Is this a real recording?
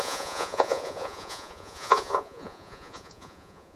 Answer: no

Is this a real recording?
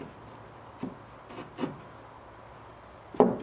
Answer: yes